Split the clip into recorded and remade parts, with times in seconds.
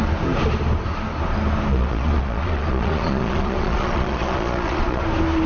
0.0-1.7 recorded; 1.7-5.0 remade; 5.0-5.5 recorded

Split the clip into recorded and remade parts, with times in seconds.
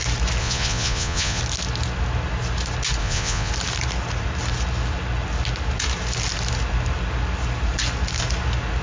0.0-0.4 recorded; 0.4-1.4 remade; 1.4-3.0 recorded; 3.0-3.5 remade; 3.5-8.8 recorded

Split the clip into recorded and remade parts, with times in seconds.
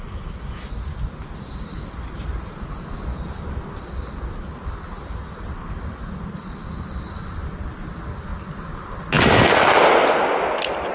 0.0-10.9 recorded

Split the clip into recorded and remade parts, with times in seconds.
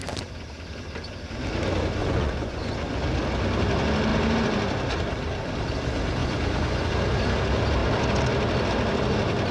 0.0-2.0 recorded; 2.0-3.0 remade; 3.0-6.2 recorded; 6.2-6.9 remade; 6.9-9.5 recorded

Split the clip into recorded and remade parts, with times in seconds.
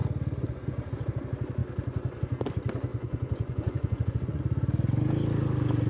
0.0-2.9 recorded; 2.9-4.4 remade; 4.4-5.9 recorded